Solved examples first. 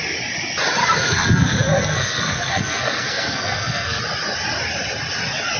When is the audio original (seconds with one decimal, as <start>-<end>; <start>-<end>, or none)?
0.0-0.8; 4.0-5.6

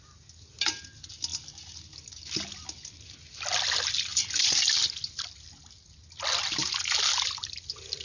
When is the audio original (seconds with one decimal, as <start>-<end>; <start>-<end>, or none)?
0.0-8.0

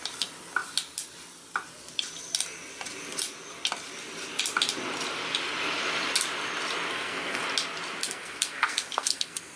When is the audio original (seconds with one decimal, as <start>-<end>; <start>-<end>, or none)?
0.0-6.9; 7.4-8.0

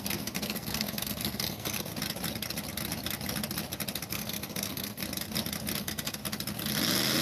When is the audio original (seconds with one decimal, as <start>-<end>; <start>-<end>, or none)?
1.9-4.1; 5.0-5.8; 6.2-7.2

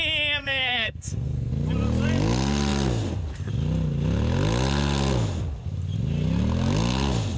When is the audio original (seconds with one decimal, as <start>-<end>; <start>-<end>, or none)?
0.0-0.4; 1.5-7.4

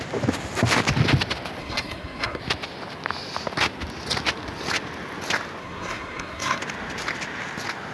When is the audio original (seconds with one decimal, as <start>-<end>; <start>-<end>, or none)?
0.0-1.6; 2.4-5.6; 6.6-7.9